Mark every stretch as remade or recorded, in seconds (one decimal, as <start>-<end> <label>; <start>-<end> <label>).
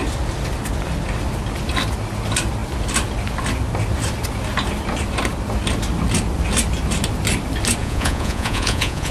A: 0.0-7.8 recorded; 7.8-9.1 remade